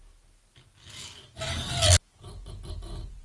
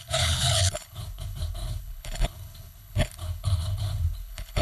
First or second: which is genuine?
first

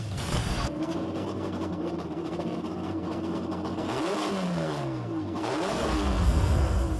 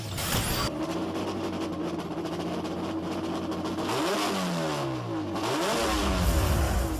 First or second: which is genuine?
second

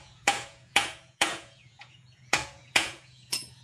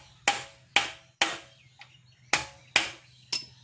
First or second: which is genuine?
second